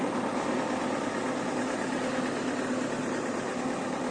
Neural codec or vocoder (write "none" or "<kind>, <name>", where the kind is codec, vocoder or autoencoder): none